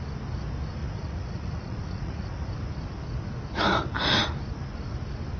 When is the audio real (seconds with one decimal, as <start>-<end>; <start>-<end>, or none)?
0.0-0.8; 2.5-5.4